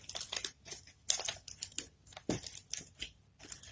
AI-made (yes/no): no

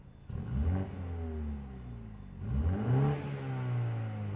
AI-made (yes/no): no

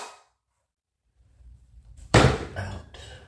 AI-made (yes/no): yes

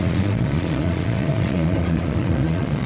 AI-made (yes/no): yes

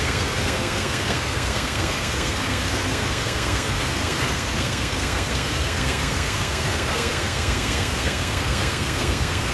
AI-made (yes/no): yes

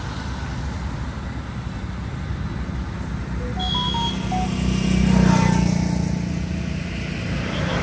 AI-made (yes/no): no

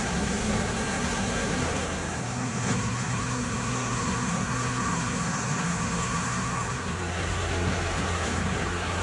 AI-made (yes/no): yes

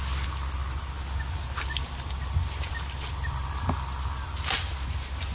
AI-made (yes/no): no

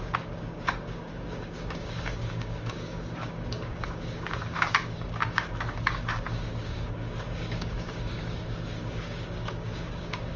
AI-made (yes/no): yes